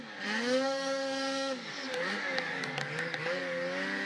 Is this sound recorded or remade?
remade